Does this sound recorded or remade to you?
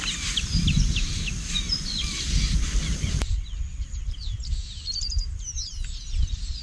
remade